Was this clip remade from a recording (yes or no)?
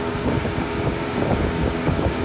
yes